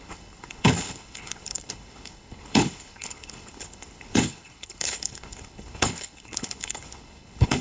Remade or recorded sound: remade